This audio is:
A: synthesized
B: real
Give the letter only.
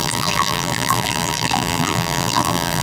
A